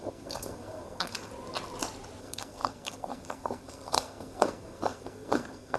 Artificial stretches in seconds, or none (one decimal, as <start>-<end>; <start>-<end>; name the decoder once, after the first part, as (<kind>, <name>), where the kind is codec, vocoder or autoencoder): 0.0-1.3 (codec, SNAC); 2.2-5.8